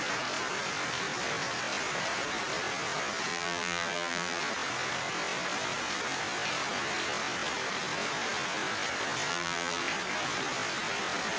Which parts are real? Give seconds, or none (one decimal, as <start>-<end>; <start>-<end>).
0.0-3.3; 4.4-9.3; 9.8-11.4